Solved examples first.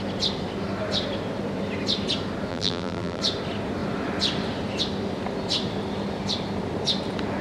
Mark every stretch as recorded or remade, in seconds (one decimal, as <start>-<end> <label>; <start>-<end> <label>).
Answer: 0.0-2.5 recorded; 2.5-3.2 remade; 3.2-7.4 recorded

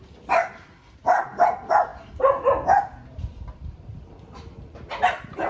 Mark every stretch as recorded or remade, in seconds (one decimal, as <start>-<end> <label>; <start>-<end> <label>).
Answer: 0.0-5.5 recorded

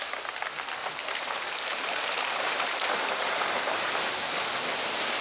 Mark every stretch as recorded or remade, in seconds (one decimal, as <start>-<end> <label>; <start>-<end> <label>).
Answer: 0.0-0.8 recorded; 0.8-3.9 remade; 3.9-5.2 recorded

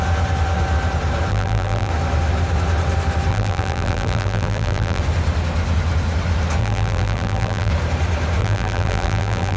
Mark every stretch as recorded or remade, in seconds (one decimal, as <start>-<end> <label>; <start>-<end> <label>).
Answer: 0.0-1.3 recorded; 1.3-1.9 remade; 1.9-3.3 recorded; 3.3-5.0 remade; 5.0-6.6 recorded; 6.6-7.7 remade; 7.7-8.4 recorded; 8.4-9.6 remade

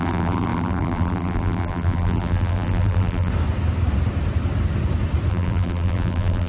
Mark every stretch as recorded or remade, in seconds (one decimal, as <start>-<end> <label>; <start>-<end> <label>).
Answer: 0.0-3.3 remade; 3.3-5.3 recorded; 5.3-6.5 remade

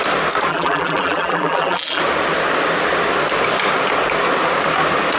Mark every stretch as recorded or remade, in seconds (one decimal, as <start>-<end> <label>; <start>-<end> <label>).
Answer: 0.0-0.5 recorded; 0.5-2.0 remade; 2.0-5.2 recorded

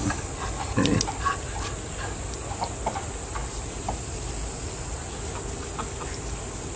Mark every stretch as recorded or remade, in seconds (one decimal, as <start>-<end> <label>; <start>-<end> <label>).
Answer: 0.0-3.4 recorded; 3.4-4.2 remade; 4.2-6.8 recorded